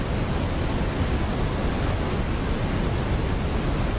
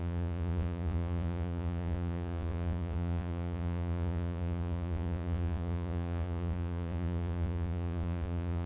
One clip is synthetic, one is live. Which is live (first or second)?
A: first